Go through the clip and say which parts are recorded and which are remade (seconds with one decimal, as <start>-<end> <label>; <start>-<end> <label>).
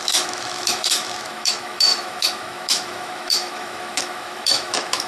0.0-5.1 remade